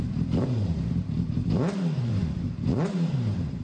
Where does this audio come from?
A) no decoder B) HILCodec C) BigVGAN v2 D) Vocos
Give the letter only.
C